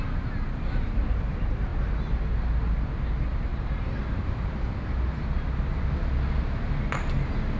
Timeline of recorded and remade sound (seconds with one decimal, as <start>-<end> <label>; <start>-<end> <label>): 0.0-3.5 recorded; 3.5-4.6 remade; 4.6-7.6 recorded